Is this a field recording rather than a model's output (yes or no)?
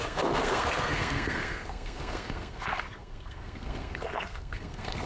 no